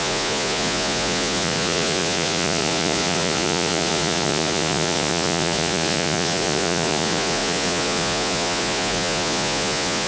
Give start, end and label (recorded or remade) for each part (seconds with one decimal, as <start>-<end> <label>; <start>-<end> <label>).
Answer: 0.0-10.1 remade